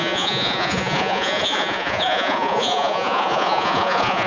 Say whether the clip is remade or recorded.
remade